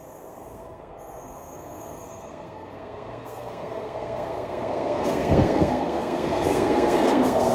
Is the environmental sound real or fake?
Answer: fake